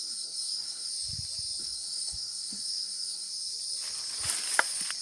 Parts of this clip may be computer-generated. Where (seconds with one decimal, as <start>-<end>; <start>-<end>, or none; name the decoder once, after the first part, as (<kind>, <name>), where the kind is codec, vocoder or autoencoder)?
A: 0.0-0.9 (codec, SNAC); 1.6-3.3